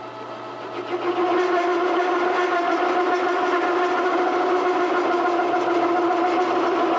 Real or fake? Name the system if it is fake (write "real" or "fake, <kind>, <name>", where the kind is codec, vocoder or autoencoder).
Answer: real